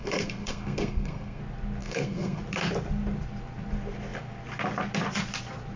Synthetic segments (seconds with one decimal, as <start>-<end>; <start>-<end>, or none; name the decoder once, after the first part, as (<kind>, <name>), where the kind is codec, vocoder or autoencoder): 0.0-1.4 (codec, SNAC); 1.8-2.4